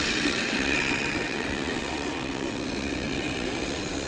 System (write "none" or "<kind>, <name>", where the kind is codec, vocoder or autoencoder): vocoder, WaveNeXt